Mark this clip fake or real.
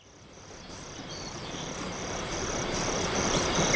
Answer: fake